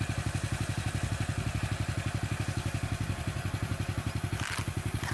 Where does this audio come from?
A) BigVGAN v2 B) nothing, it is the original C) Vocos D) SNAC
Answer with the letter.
B